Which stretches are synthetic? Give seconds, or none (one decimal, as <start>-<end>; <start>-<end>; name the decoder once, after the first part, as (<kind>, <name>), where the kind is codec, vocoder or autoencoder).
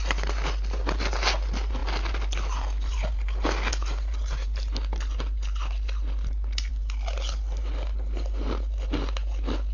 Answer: none